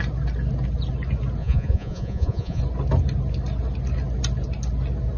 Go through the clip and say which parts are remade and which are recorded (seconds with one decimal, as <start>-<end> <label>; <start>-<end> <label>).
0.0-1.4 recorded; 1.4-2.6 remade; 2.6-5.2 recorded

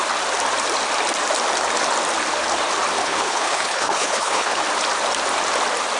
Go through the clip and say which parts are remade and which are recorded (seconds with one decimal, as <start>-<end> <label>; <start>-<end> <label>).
0.0-3.0 recorded; 3.0-4.6 remade; 4.6-6.0 recorded

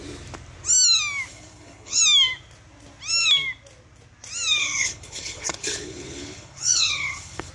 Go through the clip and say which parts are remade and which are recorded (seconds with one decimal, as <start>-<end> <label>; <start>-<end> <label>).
0.0-1.3 recorded; 1.3-2.0 remade; 2.0-4.6 recorded; 4.6-7.5 remade

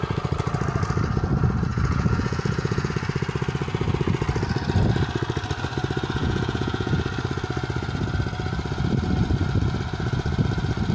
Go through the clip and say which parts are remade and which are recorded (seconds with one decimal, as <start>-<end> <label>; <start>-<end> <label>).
0.0-1.7 recorded; 1.7-2.9 remade; 2.9-6.2 recorded; 6.2-6.9 remade; 6.9-10.9 recorded

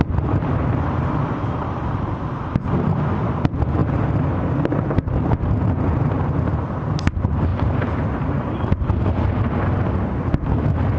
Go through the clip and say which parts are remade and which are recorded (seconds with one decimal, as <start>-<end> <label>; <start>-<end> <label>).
0.0-11.0 recorded